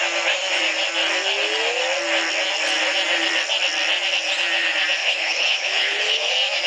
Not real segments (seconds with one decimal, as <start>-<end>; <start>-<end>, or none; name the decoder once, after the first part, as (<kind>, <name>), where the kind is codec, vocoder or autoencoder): 5.0-6.3 (codec, HILCodec)